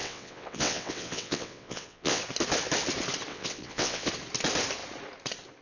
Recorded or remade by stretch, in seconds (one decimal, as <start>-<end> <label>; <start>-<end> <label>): 0.0-2.2 remade; 2.2-3.3 recorded; 3.3-4.1 remade; 4.1-5.6 recorded